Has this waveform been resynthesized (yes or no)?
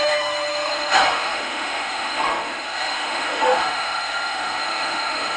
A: yes